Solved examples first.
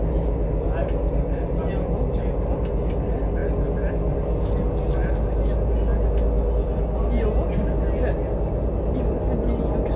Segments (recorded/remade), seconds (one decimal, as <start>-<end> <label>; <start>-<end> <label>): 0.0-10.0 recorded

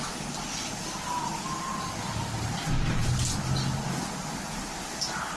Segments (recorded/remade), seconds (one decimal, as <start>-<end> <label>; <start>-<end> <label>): 0.0-5.4 recorded

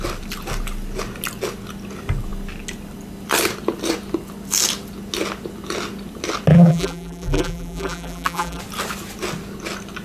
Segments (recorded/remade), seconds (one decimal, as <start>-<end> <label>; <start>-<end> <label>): 0.0-6.5 recorded; 6.5-8.6 remade; 8.6-10.0 recorded

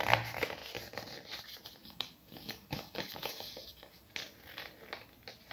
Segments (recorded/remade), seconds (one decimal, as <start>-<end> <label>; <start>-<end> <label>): 0.0-1.8 recorded; 1.8-4.1 remade; 4.1-5.5 recorded

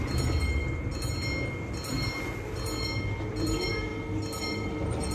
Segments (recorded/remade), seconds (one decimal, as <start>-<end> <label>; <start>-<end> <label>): 0.0-0.6 remade; 0.6-3.3 recorded; 3.3-3.9 remade; 3.9-4.4 recorded; 4.4-5.1 remade

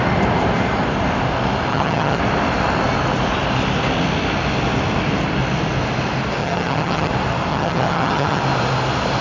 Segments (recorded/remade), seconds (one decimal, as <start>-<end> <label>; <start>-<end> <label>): 0.0-1.7 recorded; 1.7-2.2 remade; 2.2-6.4 recorded; 6.4-7.1 remade; 7.1-7.5 recorded; 7.5-8.4 remade; 8.4-9.2 recorded